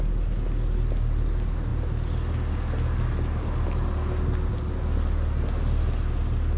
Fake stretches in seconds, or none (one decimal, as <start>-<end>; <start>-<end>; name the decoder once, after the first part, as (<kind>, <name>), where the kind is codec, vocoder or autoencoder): none